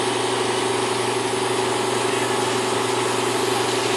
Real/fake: real